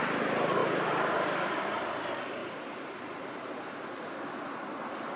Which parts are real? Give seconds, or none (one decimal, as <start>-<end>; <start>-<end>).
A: 0.0-0.6; 1.9-2.4; 3.3-5.2